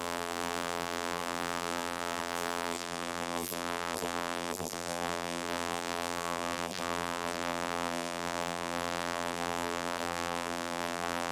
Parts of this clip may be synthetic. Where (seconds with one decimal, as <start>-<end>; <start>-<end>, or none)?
0.0-11.3